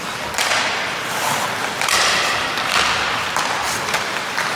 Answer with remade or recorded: remade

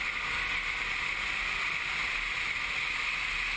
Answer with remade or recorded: recorded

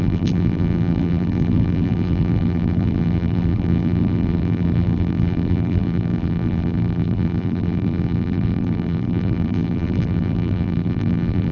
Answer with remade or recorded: remade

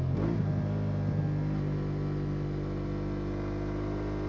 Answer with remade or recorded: recorded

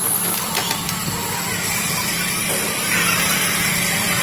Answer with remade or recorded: remade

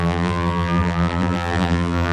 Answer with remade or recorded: remade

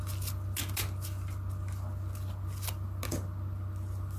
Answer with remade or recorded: recorded